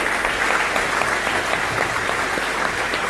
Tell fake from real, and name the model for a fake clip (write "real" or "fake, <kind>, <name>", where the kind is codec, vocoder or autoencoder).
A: real